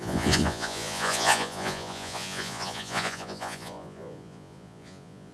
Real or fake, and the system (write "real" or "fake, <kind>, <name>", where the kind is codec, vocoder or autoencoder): fake, vocoder, Vocos